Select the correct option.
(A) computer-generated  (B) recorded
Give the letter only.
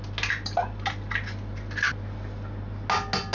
B